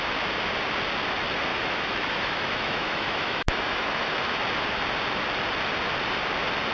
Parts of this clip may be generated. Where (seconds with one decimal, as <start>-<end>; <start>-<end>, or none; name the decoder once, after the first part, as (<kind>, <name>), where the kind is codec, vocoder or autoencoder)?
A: 1.5-4.4 (autoencoder, DAC-VAE)